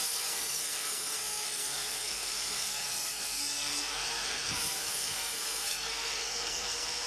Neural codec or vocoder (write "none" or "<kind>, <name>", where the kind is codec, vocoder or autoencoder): codec, SNAC